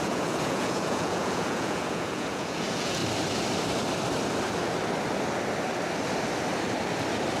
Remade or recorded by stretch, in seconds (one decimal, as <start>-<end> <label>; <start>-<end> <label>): 0.0-3.0 remade; 3.0-7.4 recorded